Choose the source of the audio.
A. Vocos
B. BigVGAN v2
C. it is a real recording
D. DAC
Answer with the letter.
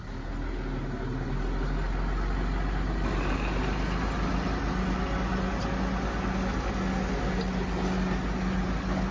C